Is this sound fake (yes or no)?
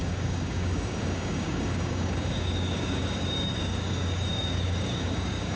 yes